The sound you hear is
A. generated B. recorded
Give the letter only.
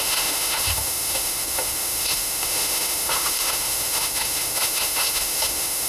A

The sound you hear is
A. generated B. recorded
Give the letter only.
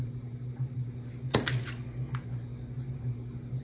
B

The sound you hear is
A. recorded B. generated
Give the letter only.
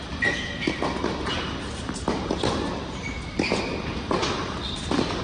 A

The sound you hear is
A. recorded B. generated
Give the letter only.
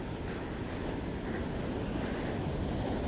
A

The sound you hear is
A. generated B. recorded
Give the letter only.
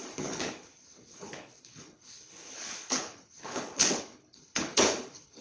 A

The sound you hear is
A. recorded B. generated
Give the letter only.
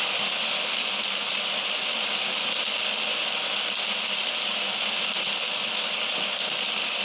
A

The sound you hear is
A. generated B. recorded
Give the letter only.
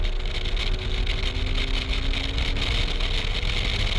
B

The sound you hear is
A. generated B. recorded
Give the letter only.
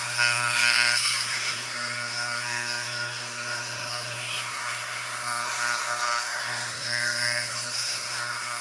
A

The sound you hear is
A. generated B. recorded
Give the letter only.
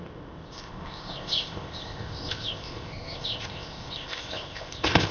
A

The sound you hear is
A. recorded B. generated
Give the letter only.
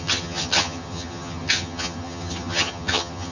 B